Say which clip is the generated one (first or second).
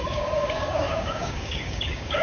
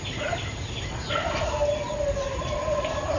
first